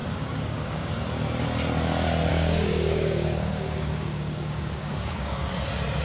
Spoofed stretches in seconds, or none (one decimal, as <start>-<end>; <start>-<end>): 0.0-0.9; 2.3-5.5

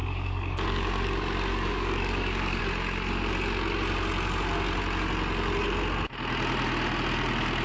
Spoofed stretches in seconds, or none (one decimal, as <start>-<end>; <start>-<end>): 0.0-2.6